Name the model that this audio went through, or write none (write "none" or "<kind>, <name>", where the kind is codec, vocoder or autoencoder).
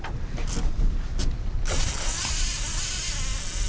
none